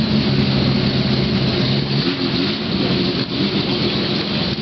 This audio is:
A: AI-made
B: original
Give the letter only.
B